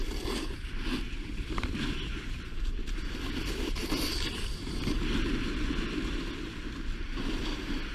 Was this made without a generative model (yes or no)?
yes